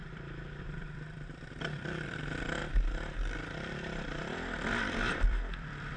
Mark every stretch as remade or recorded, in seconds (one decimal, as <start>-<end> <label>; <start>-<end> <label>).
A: 0.0-0.6 recorded; 0.6-2.6 remade; 2.6-5.1 recorded; 5.1-6.0 remade